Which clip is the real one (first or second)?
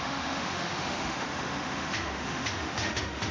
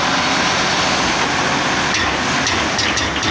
second